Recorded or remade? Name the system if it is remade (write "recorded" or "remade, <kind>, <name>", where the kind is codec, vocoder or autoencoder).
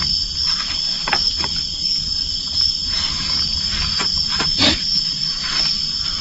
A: recorded